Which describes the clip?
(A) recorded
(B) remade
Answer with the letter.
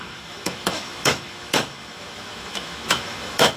B